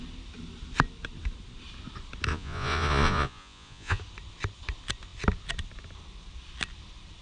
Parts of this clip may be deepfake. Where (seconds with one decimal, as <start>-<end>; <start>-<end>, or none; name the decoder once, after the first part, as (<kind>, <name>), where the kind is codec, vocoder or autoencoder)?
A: 2.3-4.0 (vocoder, Vocos)